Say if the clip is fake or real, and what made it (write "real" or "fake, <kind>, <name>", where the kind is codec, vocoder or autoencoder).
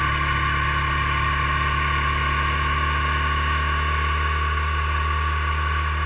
real